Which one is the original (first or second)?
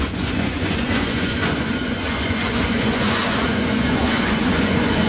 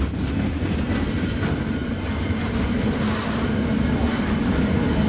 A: second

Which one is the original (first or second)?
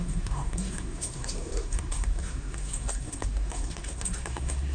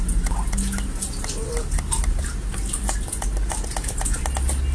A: second